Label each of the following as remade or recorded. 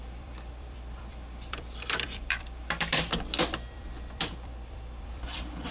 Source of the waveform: remade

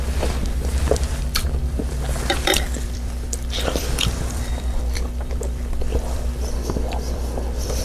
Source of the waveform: remade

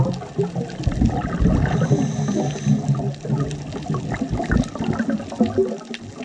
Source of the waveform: recorded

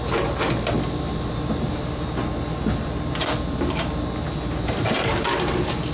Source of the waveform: recorded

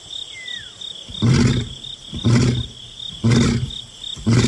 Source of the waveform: recorded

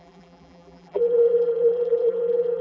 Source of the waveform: remade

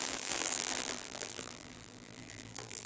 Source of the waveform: remade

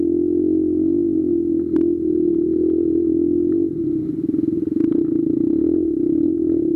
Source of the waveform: recorded